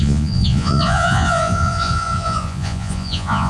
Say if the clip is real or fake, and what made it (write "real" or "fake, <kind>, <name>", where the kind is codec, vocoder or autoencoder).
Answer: fake, vocoder, Vocos